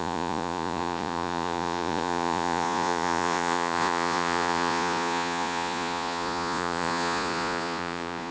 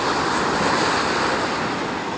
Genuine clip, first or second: second